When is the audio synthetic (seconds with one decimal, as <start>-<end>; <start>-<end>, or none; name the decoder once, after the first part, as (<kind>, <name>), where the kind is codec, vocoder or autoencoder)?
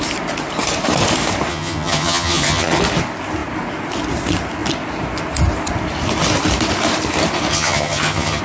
1.5-2.8 (vocoder, HiFi-GAN); 7.5-8.4